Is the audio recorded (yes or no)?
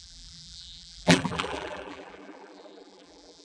no